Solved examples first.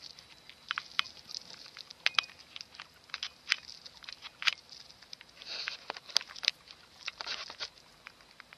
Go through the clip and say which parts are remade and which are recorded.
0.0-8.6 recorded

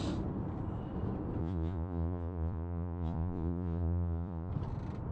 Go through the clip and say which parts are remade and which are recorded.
0.0-1.4 recorded; 1.4-4.5 remade; 4.5-5.1 recorded

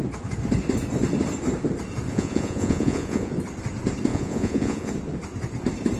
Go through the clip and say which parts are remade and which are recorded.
0.0-2.1 recorded; 2.1-3.3 remade; 3.3-4.1 recorded; 4.1-4.9 remade; 4.9-6.0 recorded

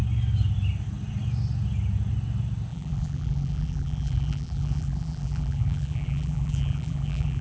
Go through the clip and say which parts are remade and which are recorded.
0.0-2.7 recorded; 2.7-7.4 remade

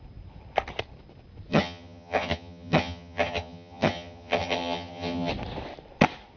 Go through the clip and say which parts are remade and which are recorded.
0.0-1.5 recorded; 1.5-5.3 remade; 5.3-6.4 recorded